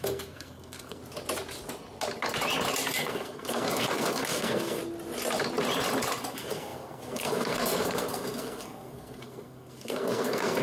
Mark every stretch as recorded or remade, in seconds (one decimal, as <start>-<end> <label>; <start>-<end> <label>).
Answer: 0.0-1.0 remade; 1.0-3.0 recorded; 3.0-4.8 remade; 4.8-6.3 recorded; 6.3-10.6 remade